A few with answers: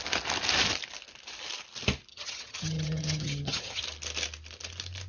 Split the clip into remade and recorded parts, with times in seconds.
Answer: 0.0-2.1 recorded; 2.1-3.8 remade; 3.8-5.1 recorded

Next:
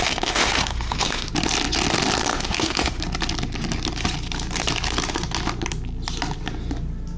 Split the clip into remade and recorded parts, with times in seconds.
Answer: 0.0-1.3 remade; 1.3-2.3 recorded; 2.3-3.0 remade; 3.0-7.2 recorded

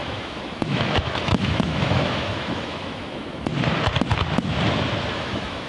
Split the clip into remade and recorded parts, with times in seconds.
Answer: 0.0-3.5 remade; 3.5-5.1 recorded; 5.1-5.7 remade

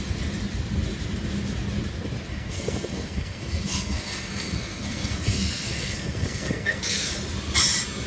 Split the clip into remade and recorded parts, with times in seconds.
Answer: 0.0-2.3 recorded; 2.3-7.1 remade; 7.1-8.1 recorded